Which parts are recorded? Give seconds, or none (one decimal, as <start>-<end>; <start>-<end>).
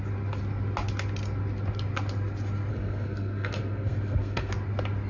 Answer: 0.0-2.7; 4.5-5.1